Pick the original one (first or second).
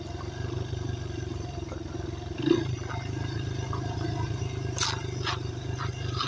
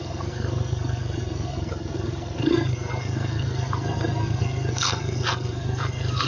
first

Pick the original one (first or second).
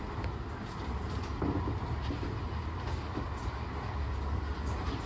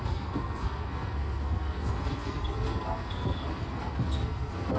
first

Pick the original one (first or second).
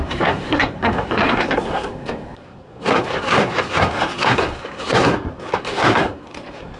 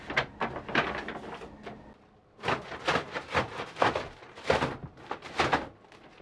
second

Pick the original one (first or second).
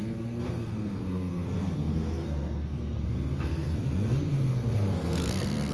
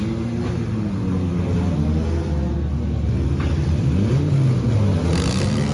second